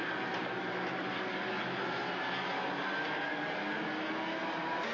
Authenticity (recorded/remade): recorded